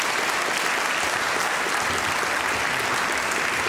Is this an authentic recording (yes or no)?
yes